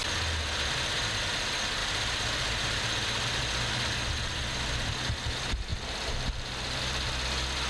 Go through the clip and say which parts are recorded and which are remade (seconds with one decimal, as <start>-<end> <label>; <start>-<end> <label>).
0.0-1.8 recorded; 1.8-3.4 remade; 3.4-5.7 recorded; 5.7-6.8 remade; 6.8-7.7 recorded